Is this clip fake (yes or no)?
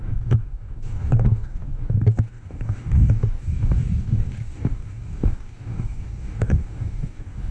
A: yes